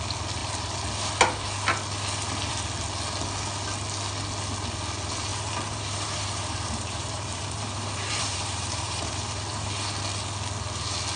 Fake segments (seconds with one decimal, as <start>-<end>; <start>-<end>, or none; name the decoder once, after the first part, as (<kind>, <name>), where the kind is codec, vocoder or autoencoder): 5.3-9.7 (vocoder, BigVGAN v2)